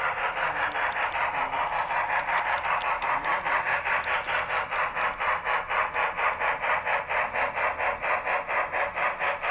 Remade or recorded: recorded